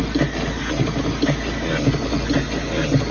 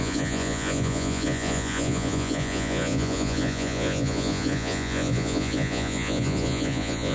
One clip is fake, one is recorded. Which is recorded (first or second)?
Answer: first